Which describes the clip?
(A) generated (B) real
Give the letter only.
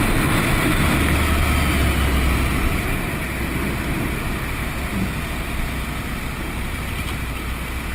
B